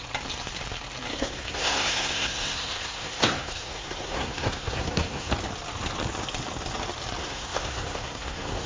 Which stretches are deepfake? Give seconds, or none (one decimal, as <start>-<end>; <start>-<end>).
1.1-5.3; 7.2-8.7